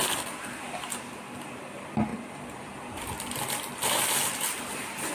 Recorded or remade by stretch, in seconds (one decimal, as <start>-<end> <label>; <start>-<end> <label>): 0.0-5.1 recorded

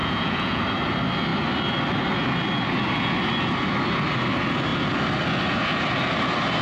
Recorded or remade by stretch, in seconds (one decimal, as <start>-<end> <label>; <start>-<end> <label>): 0.0-0.6 remade; 0.6-6.6 recorded

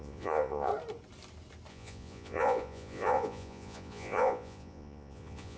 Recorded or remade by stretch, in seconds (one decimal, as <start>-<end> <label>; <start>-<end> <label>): 0.0-0.7 remade; 0.7-1.7 recorded; 1.7-5.6 remade

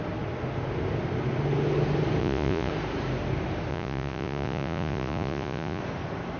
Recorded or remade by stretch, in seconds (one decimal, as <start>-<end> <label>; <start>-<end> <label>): 0.0-2.2 recorded; 2.2-2.7 remade; 2.7-3.7 recorded; 3.7-5.8 remade; 5.8-6.4 recorded